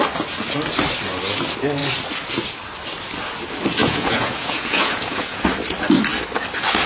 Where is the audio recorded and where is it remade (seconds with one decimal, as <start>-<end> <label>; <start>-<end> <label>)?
0.0-3.8 recorded; 3.8-5.4 remade; 5.4-6.9 recorded